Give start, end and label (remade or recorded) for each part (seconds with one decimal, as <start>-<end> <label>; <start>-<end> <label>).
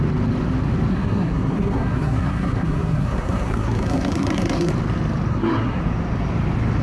0.0-0.9 recorded; 0.9-4.7 remade; 4.7-5.3 recorded; 5.3-5.8 remade; 5.8-6.8 recorded